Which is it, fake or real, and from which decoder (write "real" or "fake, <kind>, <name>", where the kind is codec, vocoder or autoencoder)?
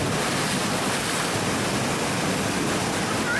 real